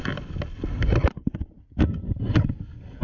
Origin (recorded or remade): recorded